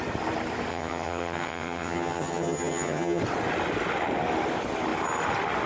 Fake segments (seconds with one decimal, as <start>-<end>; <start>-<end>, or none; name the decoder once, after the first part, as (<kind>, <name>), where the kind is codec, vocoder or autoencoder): 0.7-3.2 (vocoder, HiFi-GAN)